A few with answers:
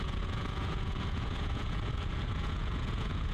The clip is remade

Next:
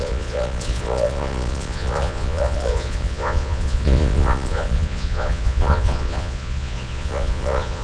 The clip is remade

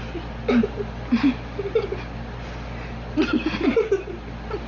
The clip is recorded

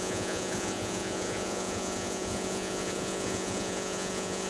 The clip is remade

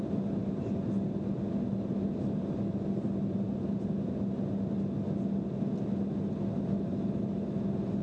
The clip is recorded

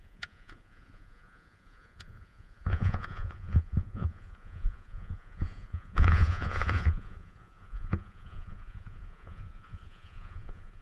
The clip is remade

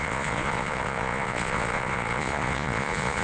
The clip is remade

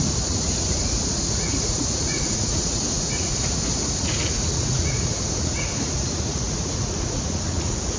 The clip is remade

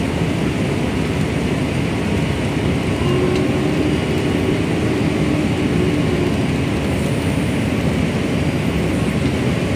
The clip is recorded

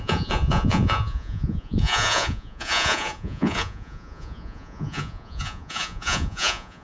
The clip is remade